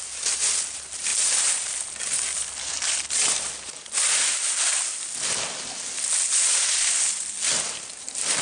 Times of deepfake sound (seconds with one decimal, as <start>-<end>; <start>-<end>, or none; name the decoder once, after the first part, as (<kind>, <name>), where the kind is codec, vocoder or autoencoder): none